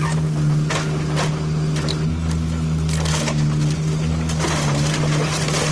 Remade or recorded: recorded